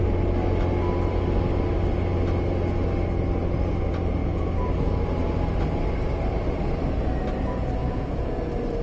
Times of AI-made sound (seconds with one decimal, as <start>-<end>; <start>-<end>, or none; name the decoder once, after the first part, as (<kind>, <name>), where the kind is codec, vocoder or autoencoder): 7.8-8.3 (vocoder, Vocos)